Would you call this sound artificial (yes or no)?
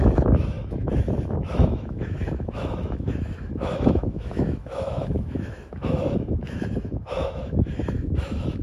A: yes